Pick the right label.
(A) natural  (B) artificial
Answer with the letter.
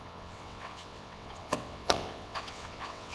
B